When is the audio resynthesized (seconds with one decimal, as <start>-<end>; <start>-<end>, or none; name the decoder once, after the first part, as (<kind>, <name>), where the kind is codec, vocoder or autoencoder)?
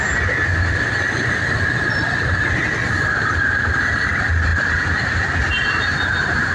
none